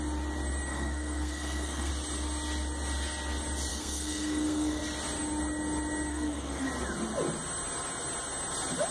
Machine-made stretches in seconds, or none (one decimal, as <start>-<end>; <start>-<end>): 0.7-1.9; 3.7-4.8; 6.1-6.7